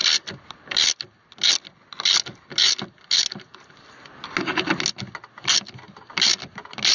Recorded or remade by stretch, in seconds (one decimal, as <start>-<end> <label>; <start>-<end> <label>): 0.0-6.9 recorded